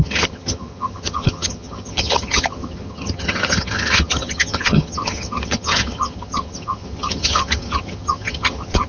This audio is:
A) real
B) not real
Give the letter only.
B